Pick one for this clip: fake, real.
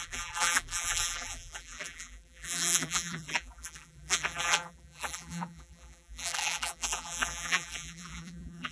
fake